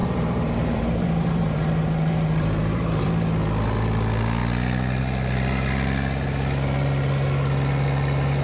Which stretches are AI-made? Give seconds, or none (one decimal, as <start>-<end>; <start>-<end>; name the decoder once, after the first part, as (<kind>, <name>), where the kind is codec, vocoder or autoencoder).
0.0-3.1 (vocoder, BigVGAN v2)